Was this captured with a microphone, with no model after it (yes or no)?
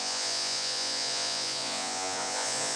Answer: no